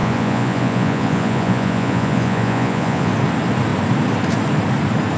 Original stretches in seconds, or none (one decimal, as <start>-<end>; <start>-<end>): 3.1-5.2